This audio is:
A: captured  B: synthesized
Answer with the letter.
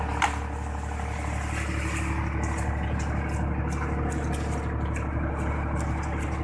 A